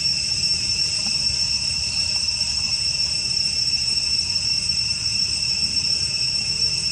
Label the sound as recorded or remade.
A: remade